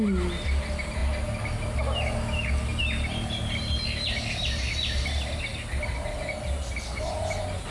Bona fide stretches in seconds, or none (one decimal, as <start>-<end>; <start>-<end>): 0.0-7.7